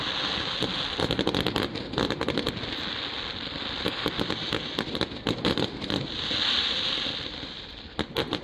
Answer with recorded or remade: recorded